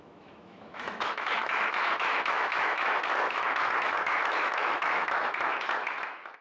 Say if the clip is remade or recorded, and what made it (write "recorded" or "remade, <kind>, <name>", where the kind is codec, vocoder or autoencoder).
remade, autoencoder, DAC-VAE